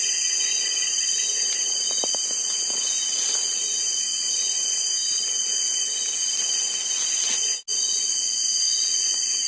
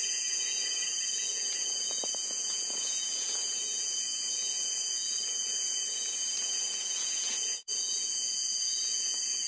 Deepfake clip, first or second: second